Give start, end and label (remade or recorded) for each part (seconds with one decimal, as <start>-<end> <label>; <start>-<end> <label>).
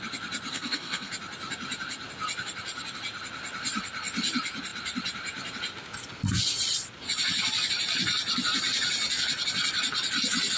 0.0-0.5 recorded; 0.5-1.1 remade; 1.1-10.6 recorded